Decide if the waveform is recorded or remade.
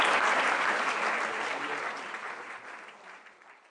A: remade